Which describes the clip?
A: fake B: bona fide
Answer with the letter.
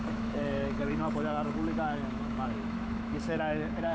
A